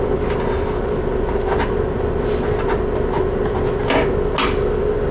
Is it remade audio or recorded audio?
recorded